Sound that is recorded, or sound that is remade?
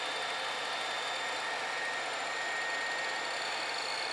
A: recorded